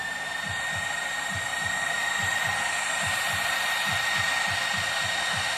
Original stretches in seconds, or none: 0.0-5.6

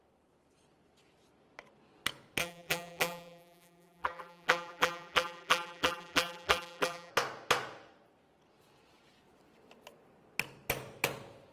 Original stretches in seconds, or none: 0.0-2.4; 7.1-11.5

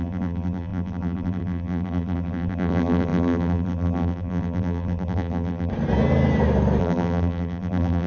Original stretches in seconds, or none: 5.7-6.8